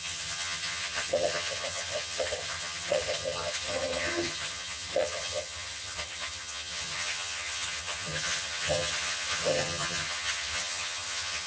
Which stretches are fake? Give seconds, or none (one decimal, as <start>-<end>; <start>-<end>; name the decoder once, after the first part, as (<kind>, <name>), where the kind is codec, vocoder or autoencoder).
0.0-11.5 (vocoder, HiFi-GAN)